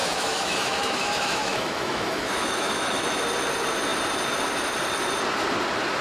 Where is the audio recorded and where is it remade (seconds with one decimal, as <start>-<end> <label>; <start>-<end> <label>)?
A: 0.0-3.2 remade; 3.2-6.0 recorded